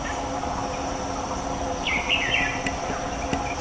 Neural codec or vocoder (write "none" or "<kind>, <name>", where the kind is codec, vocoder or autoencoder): none